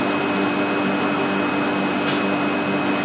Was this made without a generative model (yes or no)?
yes